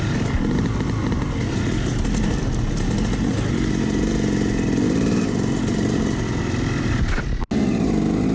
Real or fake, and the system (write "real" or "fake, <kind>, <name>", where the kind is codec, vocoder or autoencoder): real